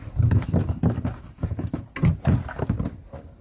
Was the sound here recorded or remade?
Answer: recorded